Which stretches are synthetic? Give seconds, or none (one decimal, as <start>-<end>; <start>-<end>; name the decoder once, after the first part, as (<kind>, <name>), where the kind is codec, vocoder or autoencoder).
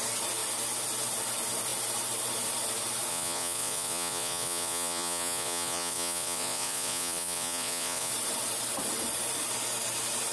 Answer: 3.1-8.1 (vocoder, Vocos)